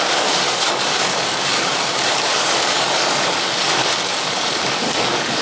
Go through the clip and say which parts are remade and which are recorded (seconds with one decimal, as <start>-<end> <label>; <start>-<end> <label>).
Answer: 0.0-5.4 remade